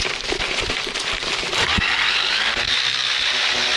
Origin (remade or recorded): remade